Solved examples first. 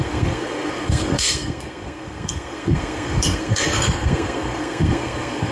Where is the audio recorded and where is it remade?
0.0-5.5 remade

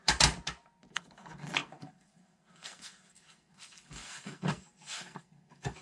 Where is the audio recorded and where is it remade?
0.0-0.9 recorded; 0.9-5.8 remade